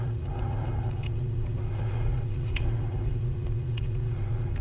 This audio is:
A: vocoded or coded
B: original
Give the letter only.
A